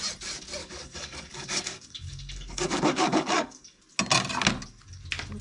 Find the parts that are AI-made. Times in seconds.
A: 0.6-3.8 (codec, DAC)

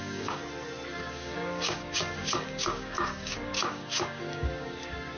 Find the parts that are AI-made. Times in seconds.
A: 0.0-0.4 (codec, DAC); 1.0-5.2

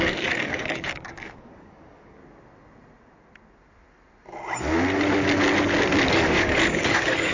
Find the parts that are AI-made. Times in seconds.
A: 0.0-2.2 (codec, DAC); 6.1-7.3

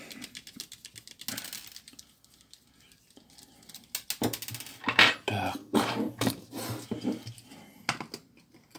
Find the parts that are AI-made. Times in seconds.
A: 5.6-6.5 (codec, DAC)